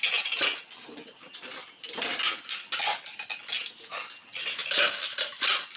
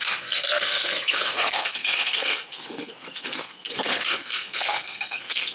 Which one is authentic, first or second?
first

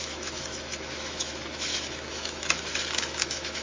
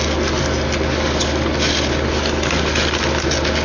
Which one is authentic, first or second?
second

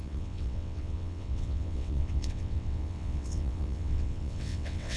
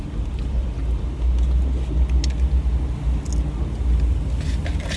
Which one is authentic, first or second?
second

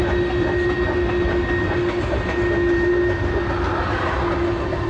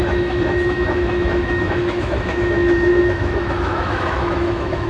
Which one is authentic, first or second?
first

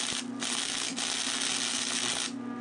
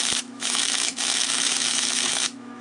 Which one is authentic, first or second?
first